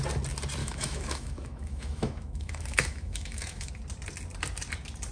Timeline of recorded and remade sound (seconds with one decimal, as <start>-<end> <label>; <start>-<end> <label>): 0.0-0.6 recorded; 0.6-3.7 remade; 3.7-5.1 recorded